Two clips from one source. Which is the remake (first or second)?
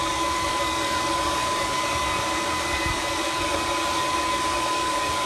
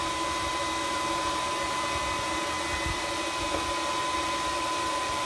first